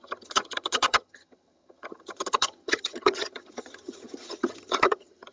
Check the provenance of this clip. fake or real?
fake